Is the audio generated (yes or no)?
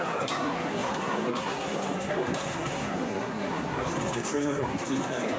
yes